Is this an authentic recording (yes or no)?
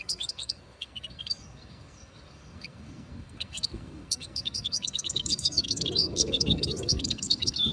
no